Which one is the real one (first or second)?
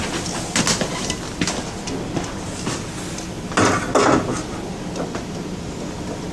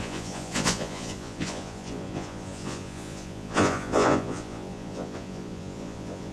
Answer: first